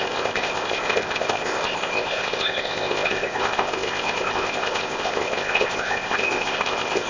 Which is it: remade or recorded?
remade